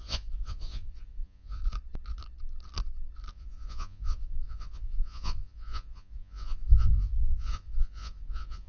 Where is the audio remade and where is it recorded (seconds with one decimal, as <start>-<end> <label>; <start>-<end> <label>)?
0.0-1.6 remade; 1.6-3.3 recorded; 3.3-8.7 remade